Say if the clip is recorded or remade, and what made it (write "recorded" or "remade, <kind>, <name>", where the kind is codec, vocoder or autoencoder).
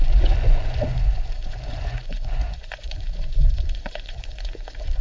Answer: remade, vocoder, Vocos